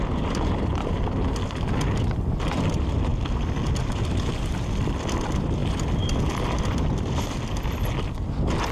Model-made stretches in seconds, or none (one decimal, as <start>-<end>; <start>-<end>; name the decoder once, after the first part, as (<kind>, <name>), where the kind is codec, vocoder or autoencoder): none